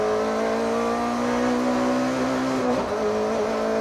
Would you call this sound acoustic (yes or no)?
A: yes